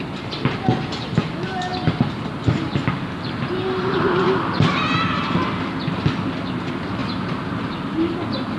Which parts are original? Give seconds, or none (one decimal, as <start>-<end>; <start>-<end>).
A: 0.0-8.6